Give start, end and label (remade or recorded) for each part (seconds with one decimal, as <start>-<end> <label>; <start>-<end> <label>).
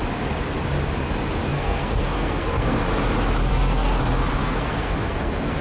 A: 0.0-1.5 recorded; 1.5-2.8 remade; 2.8-3.5 recorded; 3.5-4.0 remade; 4.0-4.4 recorded; 4.4-5.6 remade